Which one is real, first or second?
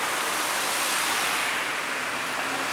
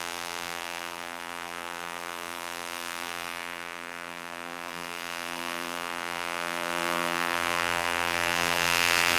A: first